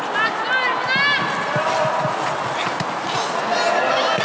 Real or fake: real